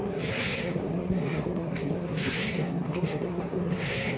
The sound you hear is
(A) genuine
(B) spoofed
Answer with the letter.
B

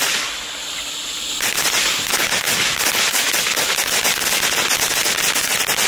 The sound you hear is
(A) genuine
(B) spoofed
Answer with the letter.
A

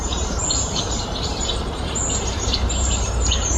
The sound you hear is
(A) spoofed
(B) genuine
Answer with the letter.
A